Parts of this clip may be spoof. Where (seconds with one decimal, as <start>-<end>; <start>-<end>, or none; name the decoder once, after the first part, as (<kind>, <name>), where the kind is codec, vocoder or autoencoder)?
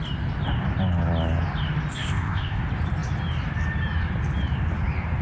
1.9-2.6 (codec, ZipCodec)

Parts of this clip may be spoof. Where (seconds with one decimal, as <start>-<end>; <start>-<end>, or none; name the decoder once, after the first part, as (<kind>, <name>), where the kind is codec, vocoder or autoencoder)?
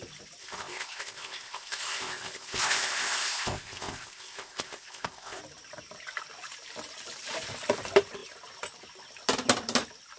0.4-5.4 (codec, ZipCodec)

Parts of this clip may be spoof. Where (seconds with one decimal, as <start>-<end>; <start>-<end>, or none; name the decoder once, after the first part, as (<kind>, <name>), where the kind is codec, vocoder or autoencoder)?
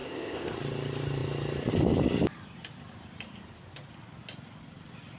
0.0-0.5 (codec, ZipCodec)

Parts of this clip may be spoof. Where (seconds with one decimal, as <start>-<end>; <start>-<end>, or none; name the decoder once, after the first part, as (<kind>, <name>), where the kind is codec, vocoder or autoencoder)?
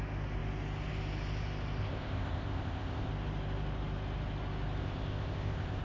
1.8-3.1 (codec, ZipCodec); 4.8-5.8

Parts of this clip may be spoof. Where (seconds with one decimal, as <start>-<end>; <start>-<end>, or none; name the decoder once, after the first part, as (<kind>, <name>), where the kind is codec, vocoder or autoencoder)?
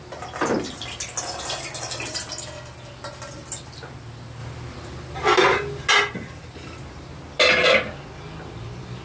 none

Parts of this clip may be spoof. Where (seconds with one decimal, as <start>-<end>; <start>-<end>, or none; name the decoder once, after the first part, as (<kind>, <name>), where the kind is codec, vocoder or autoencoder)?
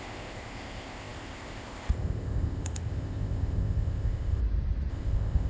0.0-4.4 (codec, ZipCodec); 4.9-5.5